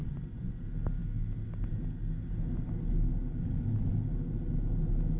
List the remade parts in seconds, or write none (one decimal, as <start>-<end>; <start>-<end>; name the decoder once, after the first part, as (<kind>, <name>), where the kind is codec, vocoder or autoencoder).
0.0-0.6 (vocoder, Vocos)